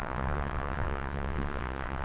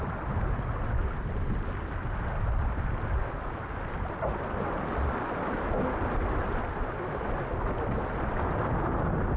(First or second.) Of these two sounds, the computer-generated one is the first